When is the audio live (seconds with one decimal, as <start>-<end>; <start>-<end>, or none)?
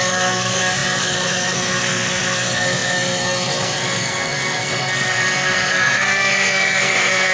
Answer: none